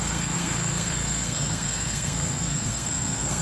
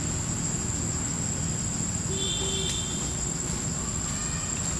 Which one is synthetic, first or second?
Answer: first